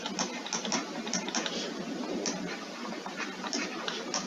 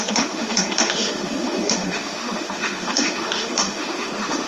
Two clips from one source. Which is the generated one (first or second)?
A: second